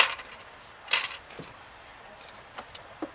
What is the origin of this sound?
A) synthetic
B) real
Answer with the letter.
B